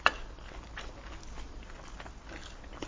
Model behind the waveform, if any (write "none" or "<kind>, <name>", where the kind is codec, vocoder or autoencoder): none